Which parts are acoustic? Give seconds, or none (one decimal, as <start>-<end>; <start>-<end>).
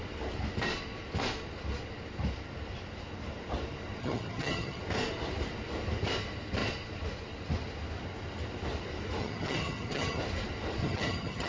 0.0-4.0; 4.8-9.2; 10.2-10.8